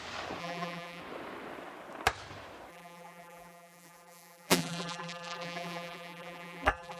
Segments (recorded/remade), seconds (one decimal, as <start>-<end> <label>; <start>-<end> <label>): 0.0-0.4 recorded; 0.4-1.0 remade; 1.0-2.7 recorded; 2.7-7.0 remade